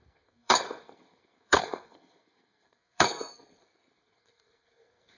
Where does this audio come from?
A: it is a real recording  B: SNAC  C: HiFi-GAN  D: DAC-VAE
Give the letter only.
B